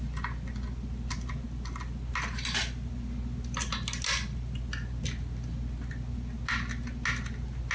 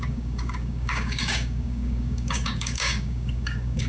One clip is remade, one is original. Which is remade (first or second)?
second